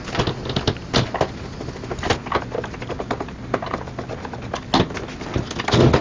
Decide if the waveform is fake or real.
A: real